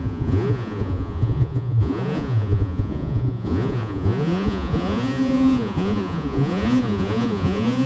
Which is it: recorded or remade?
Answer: remade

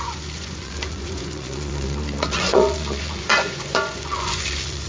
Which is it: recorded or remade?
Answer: remade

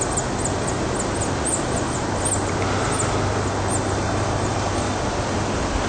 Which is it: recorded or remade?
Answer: recorded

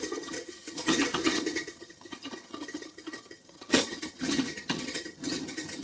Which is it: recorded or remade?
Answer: remade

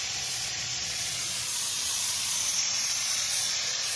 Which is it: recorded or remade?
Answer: remade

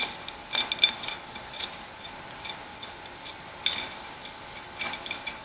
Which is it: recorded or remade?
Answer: recorded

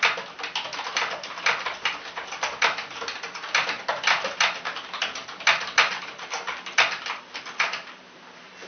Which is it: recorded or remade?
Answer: recorded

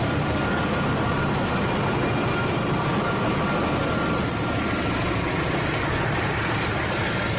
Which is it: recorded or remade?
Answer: recorded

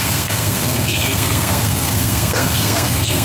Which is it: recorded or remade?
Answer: remade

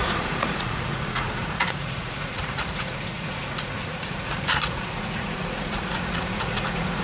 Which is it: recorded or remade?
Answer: remade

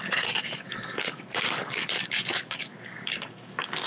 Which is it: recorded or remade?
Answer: remade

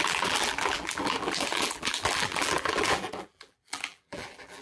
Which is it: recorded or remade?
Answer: remade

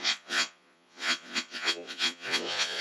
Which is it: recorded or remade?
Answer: remade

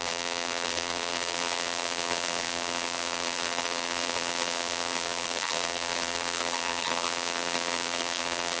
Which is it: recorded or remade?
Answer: remade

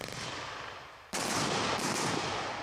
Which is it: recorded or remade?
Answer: remade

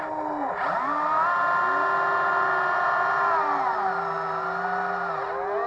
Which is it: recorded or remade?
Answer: recorded